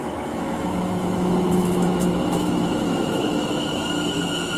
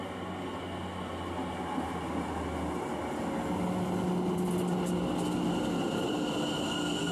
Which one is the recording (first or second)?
second